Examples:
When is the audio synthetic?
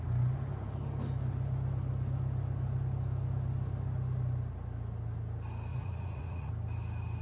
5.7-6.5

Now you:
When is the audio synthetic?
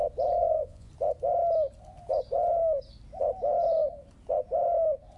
0.4-0.9